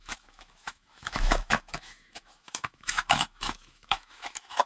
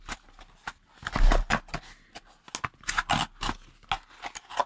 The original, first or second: second